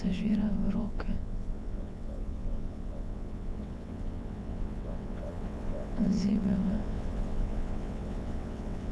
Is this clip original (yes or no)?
no